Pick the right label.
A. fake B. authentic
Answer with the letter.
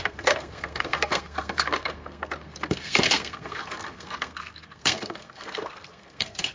A